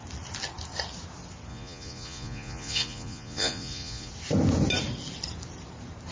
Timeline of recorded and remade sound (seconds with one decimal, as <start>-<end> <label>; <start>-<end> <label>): 0.0-1.5 recorded; 1.5-4.1 remade; 4.1-6.1 recorded